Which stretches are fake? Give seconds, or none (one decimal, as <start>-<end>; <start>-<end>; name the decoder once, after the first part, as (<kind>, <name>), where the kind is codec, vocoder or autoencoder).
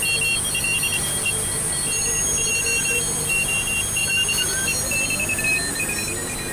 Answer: none